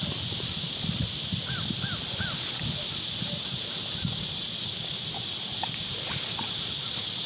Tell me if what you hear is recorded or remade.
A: recorded